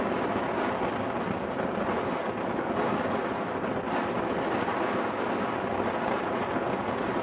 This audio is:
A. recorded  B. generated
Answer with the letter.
A